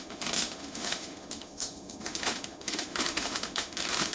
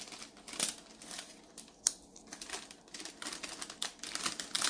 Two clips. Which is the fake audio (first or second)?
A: first